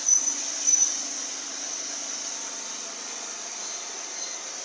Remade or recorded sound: recorded